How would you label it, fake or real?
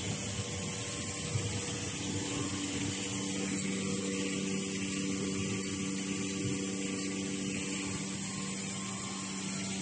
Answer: real